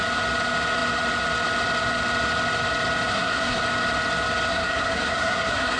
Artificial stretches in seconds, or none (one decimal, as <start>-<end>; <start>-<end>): 3.1-3.6; 4.5-5.8